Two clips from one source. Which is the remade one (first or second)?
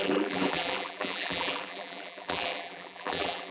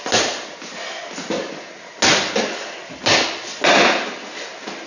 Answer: first